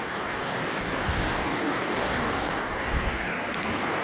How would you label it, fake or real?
fake